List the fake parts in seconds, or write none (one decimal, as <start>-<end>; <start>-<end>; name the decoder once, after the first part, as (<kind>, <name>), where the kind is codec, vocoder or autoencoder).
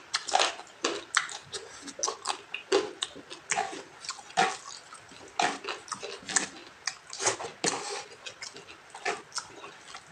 none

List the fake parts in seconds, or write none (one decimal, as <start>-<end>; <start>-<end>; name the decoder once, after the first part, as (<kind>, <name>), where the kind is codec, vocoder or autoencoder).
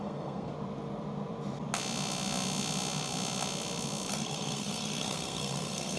0.0-0.5 (codec, SNAC); 4.1-6.0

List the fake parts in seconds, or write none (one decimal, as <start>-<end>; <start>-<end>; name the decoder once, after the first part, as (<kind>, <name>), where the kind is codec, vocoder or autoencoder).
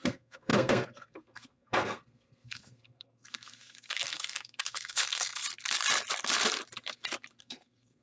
0.0-5.4 (codec, SNAC); 7.4-8.0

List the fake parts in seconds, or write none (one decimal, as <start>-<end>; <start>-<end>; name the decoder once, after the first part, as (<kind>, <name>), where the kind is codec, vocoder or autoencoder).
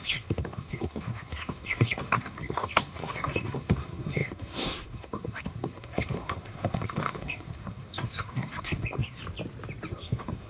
0.0-9.2 (codec, SNAC); 9.9-10.5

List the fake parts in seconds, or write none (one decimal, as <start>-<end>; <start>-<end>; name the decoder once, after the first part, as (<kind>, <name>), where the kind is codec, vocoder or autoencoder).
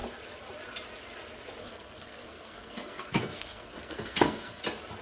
1.6-4.6 (codec, SNAC)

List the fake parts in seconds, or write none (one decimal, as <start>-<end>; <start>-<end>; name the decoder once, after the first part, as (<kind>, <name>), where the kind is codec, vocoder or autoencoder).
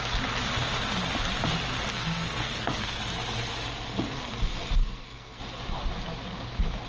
1.9-3.0 (codec, SNAC); 4.8-5.4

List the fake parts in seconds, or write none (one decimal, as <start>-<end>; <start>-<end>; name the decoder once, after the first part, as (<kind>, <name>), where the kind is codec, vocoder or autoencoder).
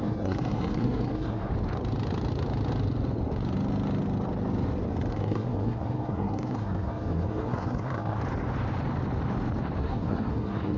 0.0-1.5 (codec, SNAC); 5.1-8.2; 9.8-10.8